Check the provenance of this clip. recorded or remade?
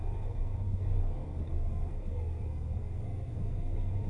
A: remade